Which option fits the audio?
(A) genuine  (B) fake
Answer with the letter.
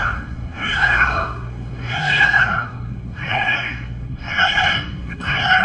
B